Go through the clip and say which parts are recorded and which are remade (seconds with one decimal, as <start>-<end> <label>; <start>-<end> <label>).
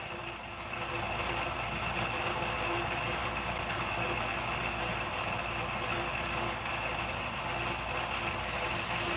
0.0-9.2 recorded